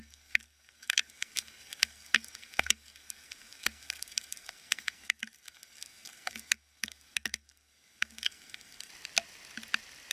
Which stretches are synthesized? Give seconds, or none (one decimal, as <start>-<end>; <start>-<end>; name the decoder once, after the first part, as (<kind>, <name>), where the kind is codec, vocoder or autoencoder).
0.0-8.9 (codec, SNAC)